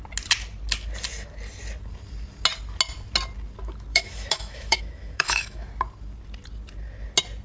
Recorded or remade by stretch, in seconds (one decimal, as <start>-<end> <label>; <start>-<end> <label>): 0.0-3.9 recorded; 3.9-5.7 remade; 5.7-7.4 recorded